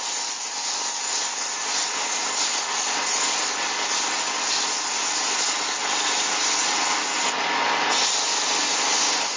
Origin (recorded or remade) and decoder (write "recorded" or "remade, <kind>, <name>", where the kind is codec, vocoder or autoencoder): recorded